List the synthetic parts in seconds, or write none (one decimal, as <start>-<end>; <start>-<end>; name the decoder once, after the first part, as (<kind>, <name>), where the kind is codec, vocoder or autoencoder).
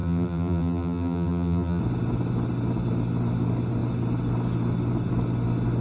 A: 0.0-1.8 (vocoder, BigVGAN v2)